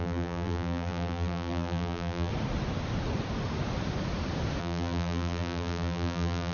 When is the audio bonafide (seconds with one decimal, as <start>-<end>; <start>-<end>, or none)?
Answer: 2.3-4.6